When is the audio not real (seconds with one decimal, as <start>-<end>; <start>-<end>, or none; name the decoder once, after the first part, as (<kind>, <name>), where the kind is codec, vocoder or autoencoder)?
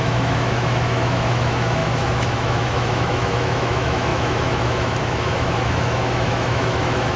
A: 0.0-7.2 (autoencoder, DAC-VAE)